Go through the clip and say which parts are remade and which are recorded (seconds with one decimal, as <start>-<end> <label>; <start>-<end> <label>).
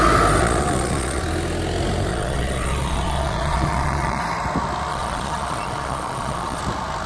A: 0.0-0.4 recorded; 0.4-1.2 remade; 1.2-2.1 recorded; 2.1-4.2 remade; 4.2-4.9 recorded; 4.9-6.6 remade; 6.6-7.1 recorded